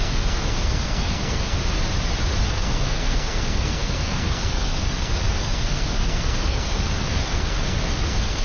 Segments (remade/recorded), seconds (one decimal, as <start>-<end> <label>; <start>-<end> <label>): 0.0-1.6 remade; 1.6-2.5 recorded; 2.5-8.4 remade